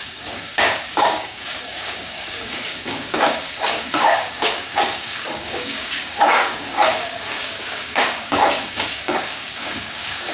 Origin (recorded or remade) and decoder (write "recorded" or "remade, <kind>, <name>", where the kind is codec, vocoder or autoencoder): remade, codec, DAC